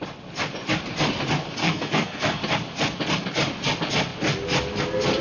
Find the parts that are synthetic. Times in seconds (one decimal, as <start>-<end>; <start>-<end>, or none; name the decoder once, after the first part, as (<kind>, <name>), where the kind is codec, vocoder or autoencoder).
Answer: 1.6-2.4 (codec, SNAC)